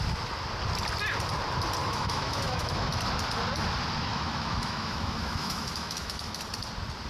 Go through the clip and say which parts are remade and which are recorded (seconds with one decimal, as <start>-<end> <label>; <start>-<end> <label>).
0.0-1.8 recorded; 1.8-2.9 remade; 2.9-4.1 recorded; 4.1-6.4 remade; 6.4-7.1 recorded